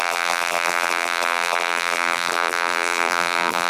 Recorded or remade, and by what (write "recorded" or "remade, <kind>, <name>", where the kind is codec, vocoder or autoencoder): remade, vocoder, BigVGAN v2